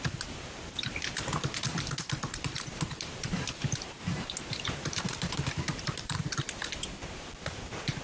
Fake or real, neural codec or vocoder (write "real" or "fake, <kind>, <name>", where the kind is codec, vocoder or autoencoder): fake, vocoder, BigVGAN v2